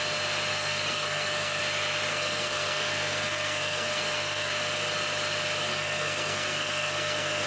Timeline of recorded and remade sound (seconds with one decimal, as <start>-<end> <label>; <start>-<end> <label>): 0.0-0.5 recorded; 0.5-1.6 remade; 1.6-2.1 recorded; 2.1-4.5 remade; 4.5-5.7 recorded; 5.7-7.5 remade